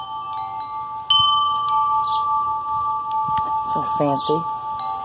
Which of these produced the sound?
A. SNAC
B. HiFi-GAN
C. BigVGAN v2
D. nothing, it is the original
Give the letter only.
D